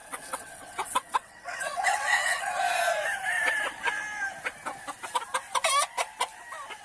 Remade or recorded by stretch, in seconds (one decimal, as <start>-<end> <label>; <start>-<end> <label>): 0.0-2.6 remade; 2.6-6.8 recorded